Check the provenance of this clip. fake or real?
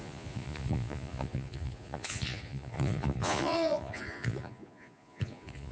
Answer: fake